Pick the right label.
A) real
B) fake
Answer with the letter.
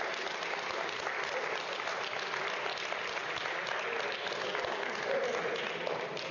A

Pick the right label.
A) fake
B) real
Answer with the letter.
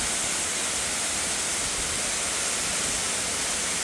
B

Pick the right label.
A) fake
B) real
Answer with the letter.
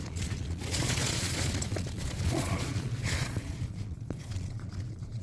A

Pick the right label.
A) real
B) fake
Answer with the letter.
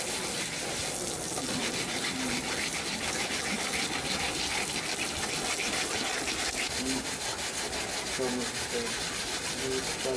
A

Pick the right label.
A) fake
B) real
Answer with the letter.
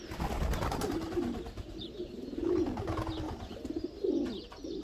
A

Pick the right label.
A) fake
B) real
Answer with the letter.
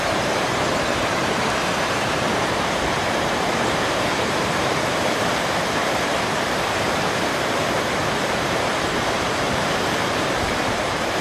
A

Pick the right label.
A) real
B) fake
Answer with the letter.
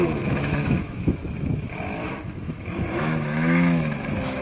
B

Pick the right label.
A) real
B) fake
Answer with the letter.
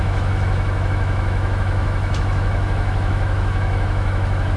B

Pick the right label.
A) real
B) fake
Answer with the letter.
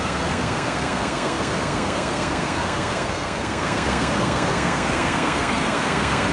B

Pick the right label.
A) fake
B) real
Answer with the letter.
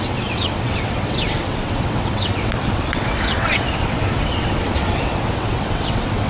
A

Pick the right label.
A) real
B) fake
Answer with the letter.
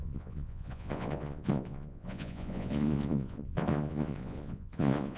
B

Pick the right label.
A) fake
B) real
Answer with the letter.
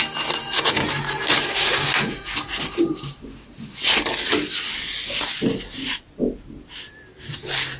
B